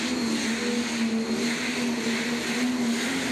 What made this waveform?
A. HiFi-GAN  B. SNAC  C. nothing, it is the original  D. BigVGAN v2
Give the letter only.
C